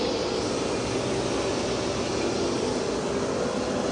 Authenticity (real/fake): real